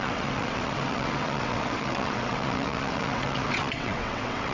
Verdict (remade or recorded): remade